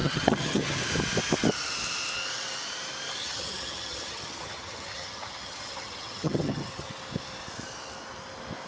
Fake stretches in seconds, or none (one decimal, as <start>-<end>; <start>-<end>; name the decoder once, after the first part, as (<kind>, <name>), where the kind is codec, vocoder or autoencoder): 0.0-0.8 (vocoder, HiFi-GAN); 3.2-6.9